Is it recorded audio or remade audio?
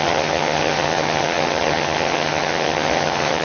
remade